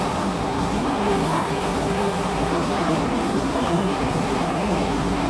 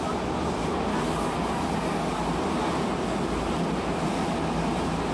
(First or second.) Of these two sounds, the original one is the second